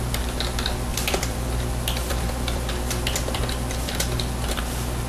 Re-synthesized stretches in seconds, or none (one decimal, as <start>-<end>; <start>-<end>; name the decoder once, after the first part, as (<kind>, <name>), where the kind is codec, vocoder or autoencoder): 0.9-1.5 (vocoder, BigVGAN v2); 2.1-2.7